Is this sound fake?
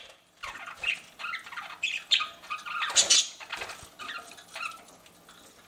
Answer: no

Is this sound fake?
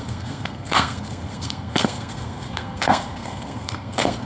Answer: yes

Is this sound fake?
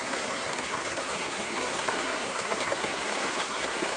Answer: yes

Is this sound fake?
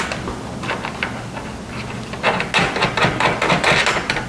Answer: no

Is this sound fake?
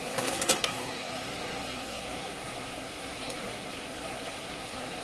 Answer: yes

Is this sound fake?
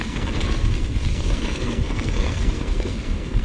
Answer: yes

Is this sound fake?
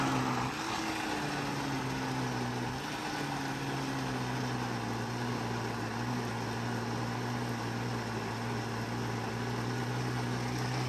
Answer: no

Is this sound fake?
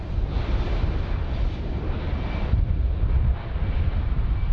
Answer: no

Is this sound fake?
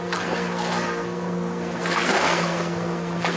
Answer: yes